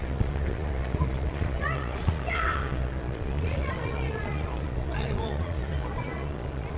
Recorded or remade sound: remade